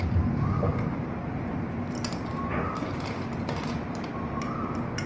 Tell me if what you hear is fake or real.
real